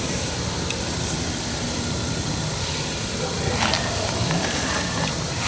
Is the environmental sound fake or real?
real